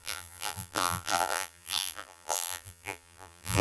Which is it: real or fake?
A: fake